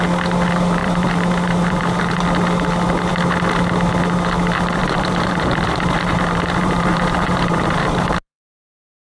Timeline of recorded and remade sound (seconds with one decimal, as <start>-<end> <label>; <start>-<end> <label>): 0.0-0.8 recorded; 0.8-2.1 remade; 2.1-4.8 recorded; 4.8-9.2 remade